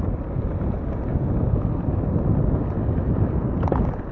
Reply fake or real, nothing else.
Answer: real